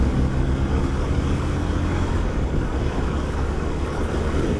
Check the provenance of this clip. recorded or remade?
remade